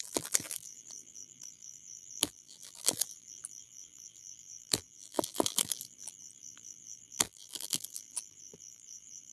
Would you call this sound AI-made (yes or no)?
yes